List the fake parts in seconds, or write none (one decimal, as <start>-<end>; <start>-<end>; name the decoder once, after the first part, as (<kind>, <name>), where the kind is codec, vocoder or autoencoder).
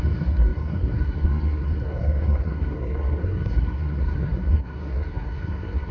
0.0-5.9 (codec, SNAC)